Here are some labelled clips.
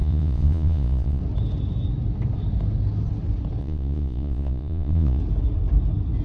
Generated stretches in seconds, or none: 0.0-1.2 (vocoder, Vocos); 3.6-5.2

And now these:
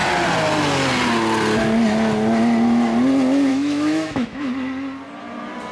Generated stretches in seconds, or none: 3.5-4.5 (autoencoder, DAC-VAE)

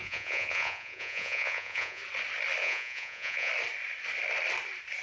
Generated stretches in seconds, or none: 0.0-2.0 (vocoder, Vocos); 2.6-3.5